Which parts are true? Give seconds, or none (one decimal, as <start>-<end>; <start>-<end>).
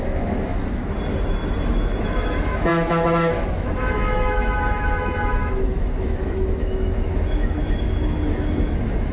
0.6-1.7